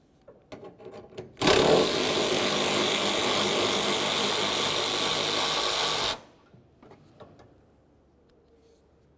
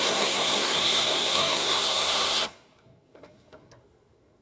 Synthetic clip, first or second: second